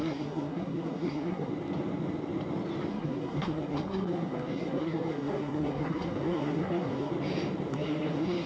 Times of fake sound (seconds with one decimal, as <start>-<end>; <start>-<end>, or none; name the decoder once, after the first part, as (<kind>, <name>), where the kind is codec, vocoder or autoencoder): 0.0-1.5 (codec, SNAC); 2.9-7.1; 7.7-8.5